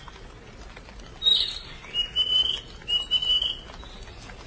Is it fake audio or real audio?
real